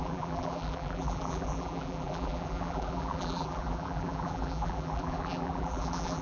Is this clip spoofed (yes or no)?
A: yes